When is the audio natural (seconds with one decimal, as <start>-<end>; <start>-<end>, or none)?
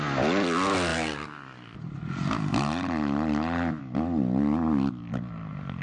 0.0-5.8